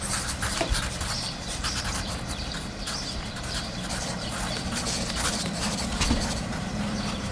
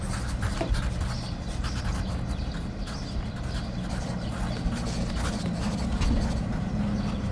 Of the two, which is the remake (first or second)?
first